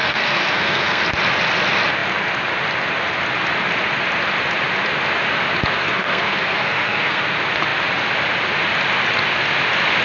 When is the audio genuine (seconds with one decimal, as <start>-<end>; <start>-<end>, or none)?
1.0-5.8; 7.2-10.0

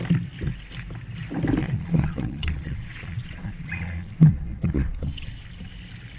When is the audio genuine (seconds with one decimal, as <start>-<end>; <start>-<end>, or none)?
0.0-1.6; 5.3-6.2

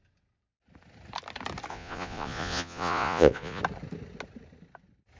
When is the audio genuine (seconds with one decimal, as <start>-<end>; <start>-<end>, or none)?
0.0-1.7; 3.6-5.2

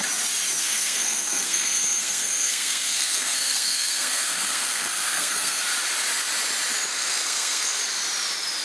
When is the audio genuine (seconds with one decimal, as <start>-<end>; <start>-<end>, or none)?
0.0-0.6; 5.6-6.9; 7.8-8.6

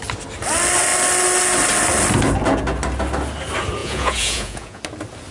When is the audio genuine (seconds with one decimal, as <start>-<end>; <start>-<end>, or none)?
0.0-3.8; 4.8-5.3

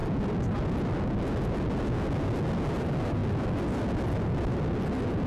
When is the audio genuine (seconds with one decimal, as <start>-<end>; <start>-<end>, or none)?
0.0-5.3